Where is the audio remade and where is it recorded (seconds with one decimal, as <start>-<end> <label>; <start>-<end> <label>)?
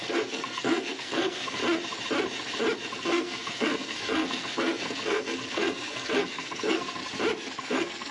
0.0-1.6 remade; 1.6-2.9 recorded; 2.9-7.0 remade; 7.0-7.6 recorded; 7.6-8.1 remade